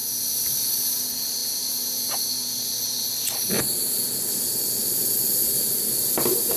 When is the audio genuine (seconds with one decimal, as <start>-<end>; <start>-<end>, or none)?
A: 0.0-6.6